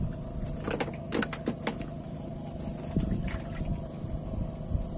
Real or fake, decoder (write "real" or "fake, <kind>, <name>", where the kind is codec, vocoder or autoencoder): real